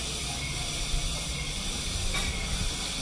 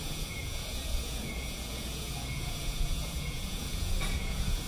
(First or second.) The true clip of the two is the first